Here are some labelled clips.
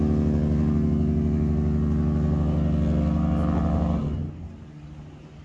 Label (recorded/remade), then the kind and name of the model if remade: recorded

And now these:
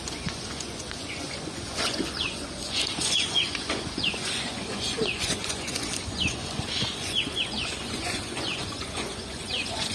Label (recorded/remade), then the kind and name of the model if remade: remade, vocoder, Vocos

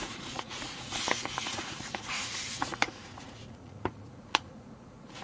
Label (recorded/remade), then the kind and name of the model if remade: remade, vocoder, Vocos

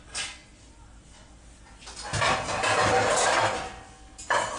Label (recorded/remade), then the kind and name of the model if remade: recorded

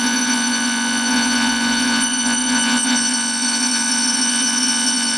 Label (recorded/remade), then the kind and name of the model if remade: remade, vocoder, Vocos